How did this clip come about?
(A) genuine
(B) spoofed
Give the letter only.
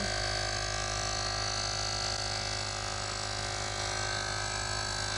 A